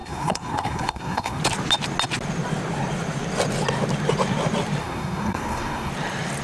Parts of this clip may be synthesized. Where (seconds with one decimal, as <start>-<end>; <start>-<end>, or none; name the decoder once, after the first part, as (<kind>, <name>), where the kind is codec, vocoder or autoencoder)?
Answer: 0.0-1.4 (codec, SNAC); 4.8-5.9